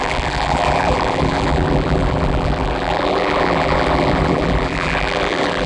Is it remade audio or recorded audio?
remade